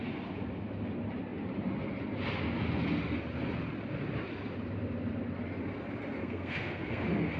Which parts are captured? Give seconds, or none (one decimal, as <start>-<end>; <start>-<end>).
0.0-6.2; 7.0-7.4